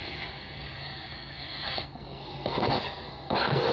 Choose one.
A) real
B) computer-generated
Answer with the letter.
B